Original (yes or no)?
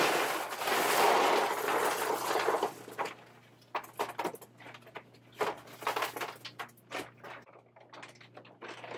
yes